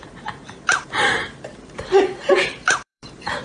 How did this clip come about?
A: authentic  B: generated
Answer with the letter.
B